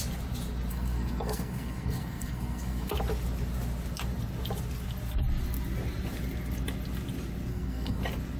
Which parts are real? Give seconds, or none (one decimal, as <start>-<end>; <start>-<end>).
0.0-0.7; 2.9-7.5; 8.0-8.4